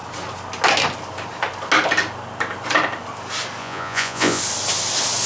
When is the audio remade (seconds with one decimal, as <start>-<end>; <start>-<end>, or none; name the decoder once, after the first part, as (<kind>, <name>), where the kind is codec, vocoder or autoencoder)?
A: 3.6-4.4 (vocoder, Vocos)